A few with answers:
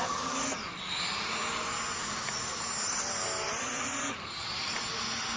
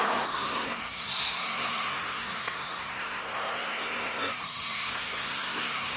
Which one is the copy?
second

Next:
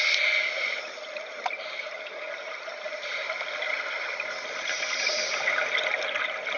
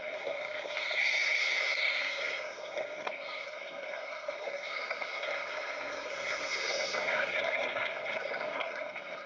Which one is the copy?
second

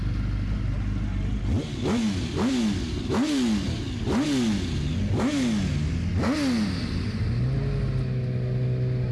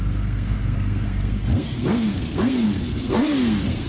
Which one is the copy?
second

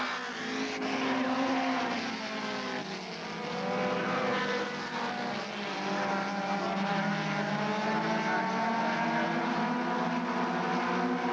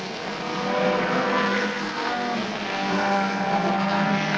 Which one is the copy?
second